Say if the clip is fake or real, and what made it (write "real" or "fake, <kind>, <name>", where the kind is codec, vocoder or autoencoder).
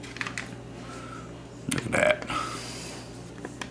real